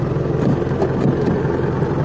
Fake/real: real